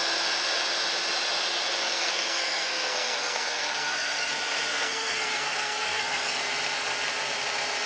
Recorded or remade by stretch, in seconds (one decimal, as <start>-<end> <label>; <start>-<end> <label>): 0.0-1.8 recorded; 1.8-4.3 remade; 4.3-4.7 recorded; 4.7-6.4 remade; 6.4-7.9 recorded